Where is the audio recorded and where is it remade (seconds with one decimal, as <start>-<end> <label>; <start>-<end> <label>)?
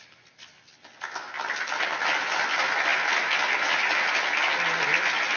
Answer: 0.0-5.4 recorded